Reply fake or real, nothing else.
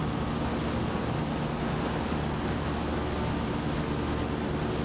real